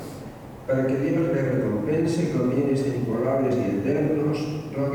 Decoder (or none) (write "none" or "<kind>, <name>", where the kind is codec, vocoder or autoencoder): none